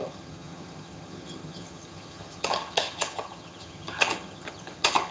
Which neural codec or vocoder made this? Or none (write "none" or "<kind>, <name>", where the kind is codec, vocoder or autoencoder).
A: vocoder, HiFi-GAN